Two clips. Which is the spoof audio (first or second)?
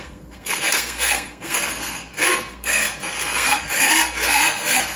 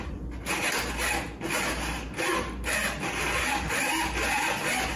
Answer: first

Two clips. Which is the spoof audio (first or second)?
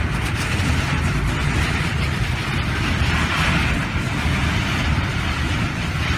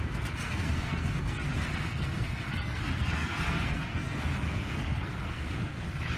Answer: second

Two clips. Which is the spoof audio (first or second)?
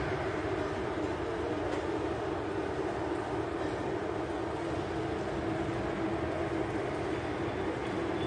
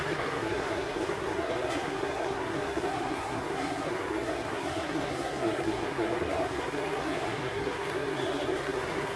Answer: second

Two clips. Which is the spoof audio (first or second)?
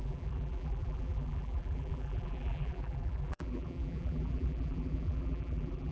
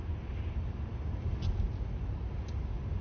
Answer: first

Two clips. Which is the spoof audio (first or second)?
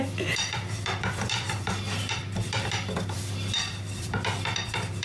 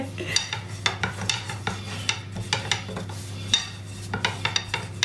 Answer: first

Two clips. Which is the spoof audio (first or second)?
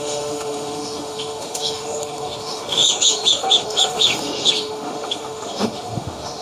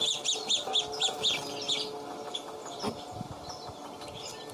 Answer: first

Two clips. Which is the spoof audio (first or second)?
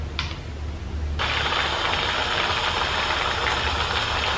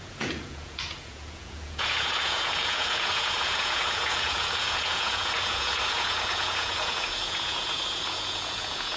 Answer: second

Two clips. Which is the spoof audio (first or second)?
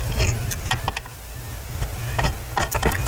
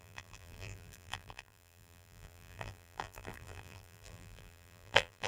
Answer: second